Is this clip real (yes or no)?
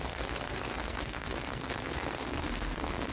no